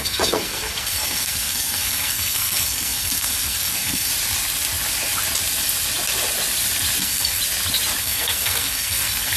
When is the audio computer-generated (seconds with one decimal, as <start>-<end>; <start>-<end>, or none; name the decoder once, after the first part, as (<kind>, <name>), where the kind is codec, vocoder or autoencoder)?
0.0-4.1 (codec, SNAC); 7.0-7.4; 8.0-9.4